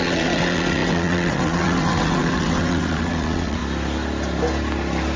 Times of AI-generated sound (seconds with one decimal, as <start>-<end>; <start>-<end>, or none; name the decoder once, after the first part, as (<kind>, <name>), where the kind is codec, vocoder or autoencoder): 0.0-3.6 (vocoder, WaveNeXt)